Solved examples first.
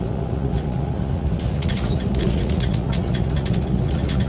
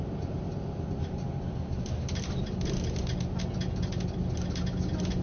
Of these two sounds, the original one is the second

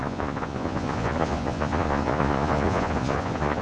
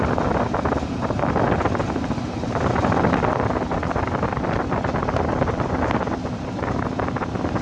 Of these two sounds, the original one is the second